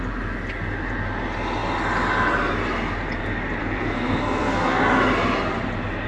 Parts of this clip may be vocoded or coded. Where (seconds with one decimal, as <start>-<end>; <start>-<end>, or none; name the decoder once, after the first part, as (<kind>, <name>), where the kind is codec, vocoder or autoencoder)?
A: 3.6-4.8 (codec, SNAC)